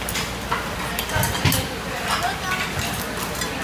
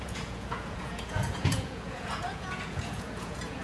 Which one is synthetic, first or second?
second